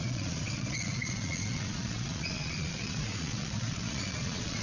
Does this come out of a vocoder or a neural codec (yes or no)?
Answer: yes